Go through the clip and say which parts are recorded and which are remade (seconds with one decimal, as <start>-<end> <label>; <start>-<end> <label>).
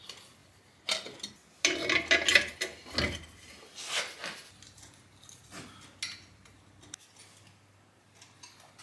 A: 0.0-8.8 recorded